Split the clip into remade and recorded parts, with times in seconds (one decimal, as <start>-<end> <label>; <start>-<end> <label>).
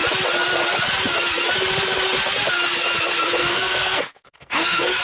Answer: 0.0-3.4 recorded; 3.4-5.0 remade